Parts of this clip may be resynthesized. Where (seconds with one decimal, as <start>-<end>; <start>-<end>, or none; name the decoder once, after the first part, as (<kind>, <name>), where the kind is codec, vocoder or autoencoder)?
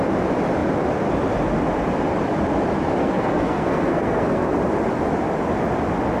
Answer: 3.0-4.5 (codec, SNAC)